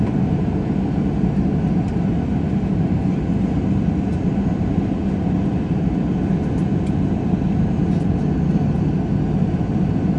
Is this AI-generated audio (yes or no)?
no